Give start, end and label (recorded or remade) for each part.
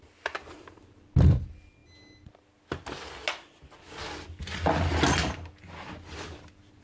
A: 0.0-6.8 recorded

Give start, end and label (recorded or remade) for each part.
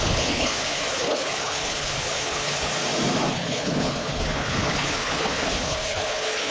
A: 0.0-2.7 remade; 2.7-3.3 recorded; 3.3-6.5 remade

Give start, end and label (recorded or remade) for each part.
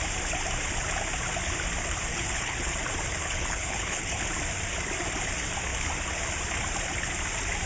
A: 0.0-2.1 recorded; 2.1-2.7 remade; 2.7-3.2 recorded; 3.2-4.3 remade; 4.3-7.7 recorded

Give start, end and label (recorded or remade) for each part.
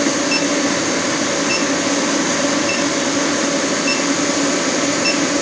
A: 0.0-5.4 recorded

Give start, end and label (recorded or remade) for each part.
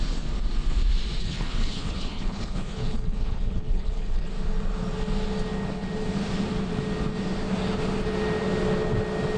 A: 0.0-1.2 recorded; 1.2-4.3 remade; 4.3-9.4 recorded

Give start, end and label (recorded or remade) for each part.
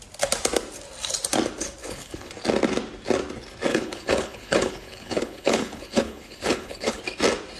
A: 0.0-1.8 recorded; 1.8-2.3 remade; 2.3-3.7 recorded; 3.7-7.0 remade; 7.0-7.6 recorded